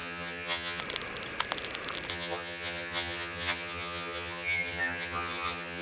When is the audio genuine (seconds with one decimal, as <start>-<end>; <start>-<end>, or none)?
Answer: 0.8-2.1

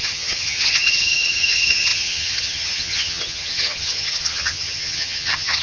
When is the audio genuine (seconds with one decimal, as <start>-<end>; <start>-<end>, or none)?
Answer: none

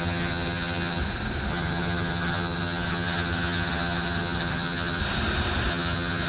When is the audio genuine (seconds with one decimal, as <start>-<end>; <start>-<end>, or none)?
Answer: 1.0-1.5; 5.0-5.7

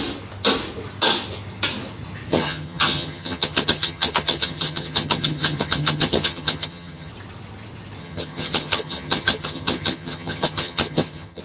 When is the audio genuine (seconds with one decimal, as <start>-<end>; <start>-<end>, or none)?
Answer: 0.0-2.3; 7.1-8.0

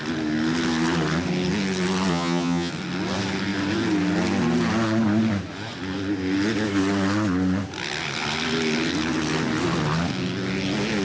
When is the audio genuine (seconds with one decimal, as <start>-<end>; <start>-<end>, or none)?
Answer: 0.0-2.1; 2.7-11.0

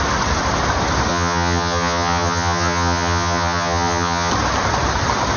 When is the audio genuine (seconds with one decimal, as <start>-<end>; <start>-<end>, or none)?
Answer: 0.0-1.1; 4.3-5.4

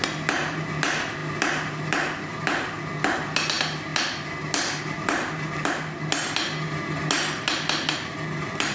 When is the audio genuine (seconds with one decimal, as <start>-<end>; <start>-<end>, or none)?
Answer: 0.0-8.7

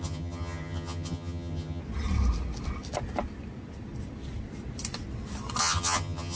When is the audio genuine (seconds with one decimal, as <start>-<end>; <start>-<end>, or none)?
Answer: 1.8-5.6